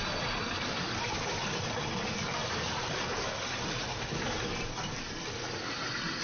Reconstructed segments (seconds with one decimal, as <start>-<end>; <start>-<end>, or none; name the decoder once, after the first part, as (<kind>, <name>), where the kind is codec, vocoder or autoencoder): 2.4-3.4 (vocoder, BigVGAN v2)